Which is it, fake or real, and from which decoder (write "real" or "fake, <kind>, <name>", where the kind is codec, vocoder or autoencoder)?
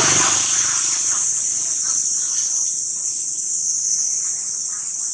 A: real